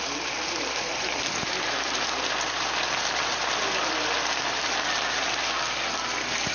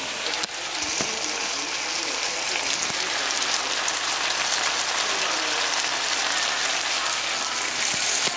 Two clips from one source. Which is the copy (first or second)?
first